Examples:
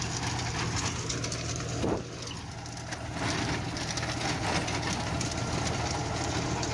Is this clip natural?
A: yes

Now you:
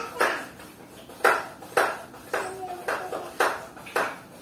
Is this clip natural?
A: yes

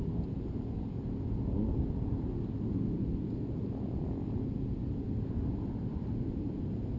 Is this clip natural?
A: yes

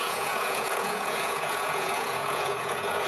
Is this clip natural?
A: no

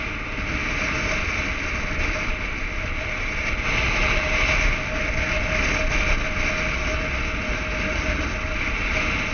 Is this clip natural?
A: yes